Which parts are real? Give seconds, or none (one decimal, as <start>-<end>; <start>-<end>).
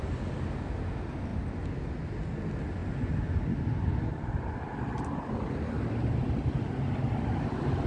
0.0-7.9